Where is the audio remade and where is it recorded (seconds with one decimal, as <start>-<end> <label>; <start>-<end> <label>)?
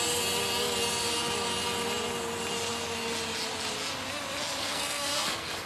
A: 0.0-4.6 recorded; 4.6-5.7 remade